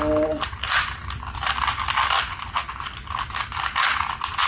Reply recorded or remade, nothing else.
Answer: recorded